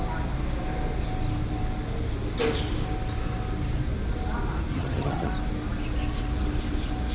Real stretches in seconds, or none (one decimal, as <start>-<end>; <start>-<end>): 0.0-4.7; 5.3-7.1